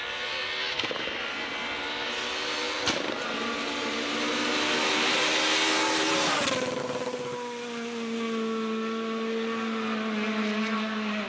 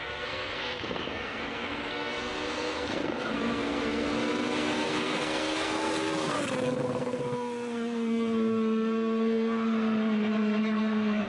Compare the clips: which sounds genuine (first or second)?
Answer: first